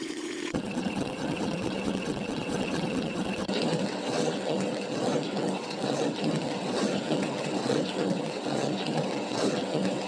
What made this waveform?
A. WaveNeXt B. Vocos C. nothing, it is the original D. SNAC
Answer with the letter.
A